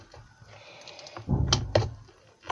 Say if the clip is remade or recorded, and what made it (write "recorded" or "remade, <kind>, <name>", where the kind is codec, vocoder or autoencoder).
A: recorded